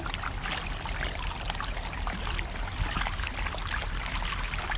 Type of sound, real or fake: real